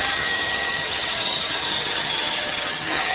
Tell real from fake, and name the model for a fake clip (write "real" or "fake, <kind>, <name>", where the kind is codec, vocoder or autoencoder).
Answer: fake, vocoder, HiFi-GAN